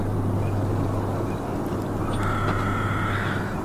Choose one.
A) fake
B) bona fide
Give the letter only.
B